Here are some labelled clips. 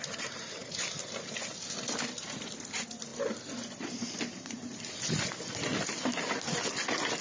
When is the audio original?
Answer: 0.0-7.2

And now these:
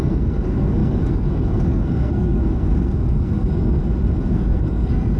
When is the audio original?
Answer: 3.8-4.3

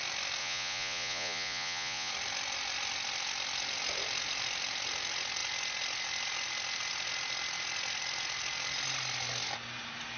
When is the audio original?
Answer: 0.0-0.4; 2.1-10.2

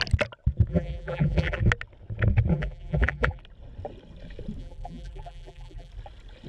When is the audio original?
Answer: 0.0-0.7; 1.6-2.5; 3.4-4.6; 5.9-6.5

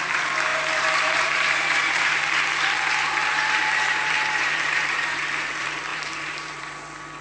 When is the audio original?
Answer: 0.0-0.5; 2.4-3.2; 5.2-5.9; 6.8-7.2